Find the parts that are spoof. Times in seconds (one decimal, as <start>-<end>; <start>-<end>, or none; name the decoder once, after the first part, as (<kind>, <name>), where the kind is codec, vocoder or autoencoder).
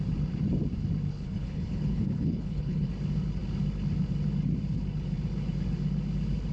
1.1-2.9 (codec, HILCodec)